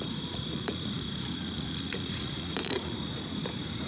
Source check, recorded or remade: remade